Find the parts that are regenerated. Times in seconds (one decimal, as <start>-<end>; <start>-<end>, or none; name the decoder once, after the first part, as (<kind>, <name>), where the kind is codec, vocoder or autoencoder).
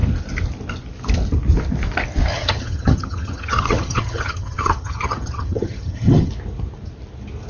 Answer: 2.3-6.3 (vocoder, HiFi-GAN)